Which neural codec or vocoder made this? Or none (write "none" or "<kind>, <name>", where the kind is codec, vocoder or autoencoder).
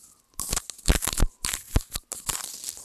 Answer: none